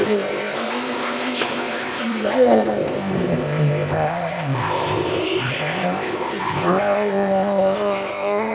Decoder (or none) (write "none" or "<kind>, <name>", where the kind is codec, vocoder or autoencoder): codec, ZipCodec